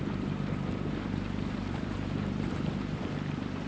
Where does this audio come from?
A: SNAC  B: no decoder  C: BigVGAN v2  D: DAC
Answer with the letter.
C